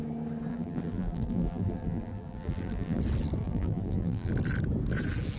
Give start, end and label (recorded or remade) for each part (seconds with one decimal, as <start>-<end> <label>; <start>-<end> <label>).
0.0-0.5 recorded; 0.5-3.0 remade; 3.0-3.4 recorded; 3.4-4.3 remade; 4.3-5.4 recorded